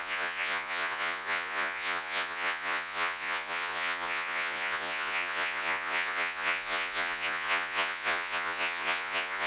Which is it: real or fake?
fake